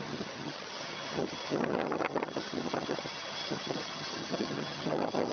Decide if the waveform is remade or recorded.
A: remade